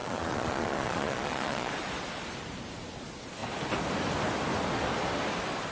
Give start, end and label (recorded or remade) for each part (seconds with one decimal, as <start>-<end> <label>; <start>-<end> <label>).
0.0-1.7 remade; 1.7-5.7 recorded